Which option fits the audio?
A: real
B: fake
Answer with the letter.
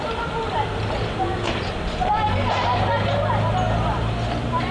A